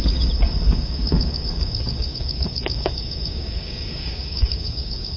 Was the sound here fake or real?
fake